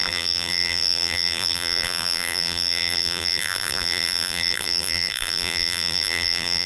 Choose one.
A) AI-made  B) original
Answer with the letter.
A